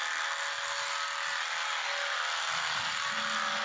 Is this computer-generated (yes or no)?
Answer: no